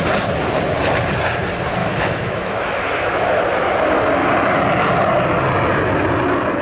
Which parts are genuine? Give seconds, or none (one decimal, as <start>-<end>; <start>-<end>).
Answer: 0.0-1.8; 3.4-6.6